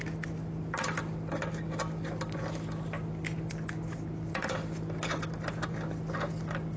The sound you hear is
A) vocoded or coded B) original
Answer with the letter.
B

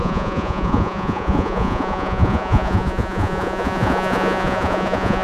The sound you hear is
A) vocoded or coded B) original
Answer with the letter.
A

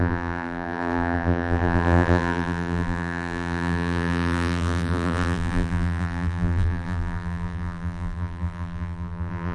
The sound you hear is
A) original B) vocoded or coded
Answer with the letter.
B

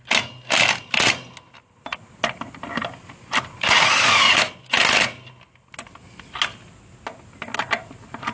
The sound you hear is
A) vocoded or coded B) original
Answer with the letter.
B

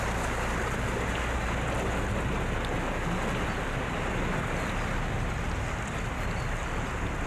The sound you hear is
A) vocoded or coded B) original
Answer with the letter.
B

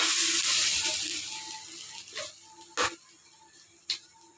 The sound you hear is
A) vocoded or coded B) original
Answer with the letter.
B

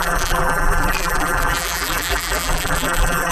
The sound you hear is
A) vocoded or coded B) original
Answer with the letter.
A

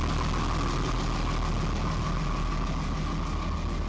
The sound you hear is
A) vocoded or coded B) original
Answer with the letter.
B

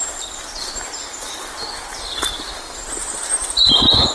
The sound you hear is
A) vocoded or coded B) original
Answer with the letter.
B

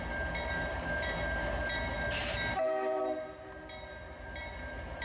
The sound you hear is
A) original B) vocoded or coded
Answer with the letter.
A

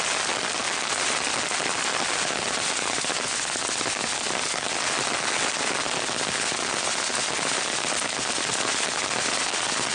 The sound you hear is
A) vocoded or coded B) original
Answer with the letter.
B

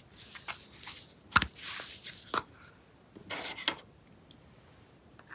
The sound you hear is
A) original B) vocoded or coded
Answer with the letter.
A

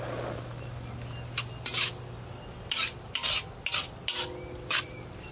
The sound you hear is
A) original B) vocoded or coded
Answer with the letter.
A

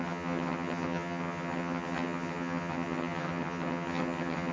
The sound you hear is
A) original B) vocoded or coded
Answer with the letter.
B